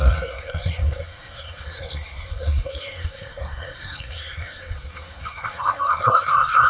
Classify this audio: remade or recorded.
remade